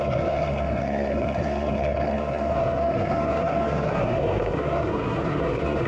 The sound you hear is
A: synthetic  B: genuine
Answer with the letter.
A